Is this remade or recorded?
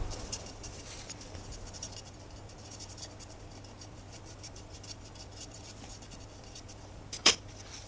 remade